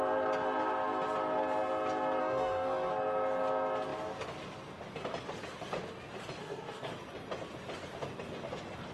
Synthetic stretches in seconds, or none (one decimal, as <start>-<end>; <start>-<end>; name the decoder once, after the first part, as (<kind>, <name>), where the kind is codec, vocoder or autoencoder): 2.2-2.9 (codec, DAC); 6.4-6.9